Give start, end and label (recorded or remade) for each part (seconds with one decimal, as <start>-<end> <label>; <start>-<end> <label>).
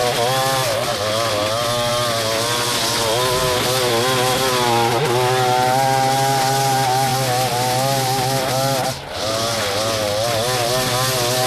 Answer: 0.0-11.5 recorded